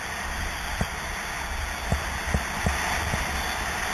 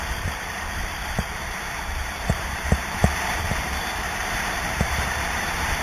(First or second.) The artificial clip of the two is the second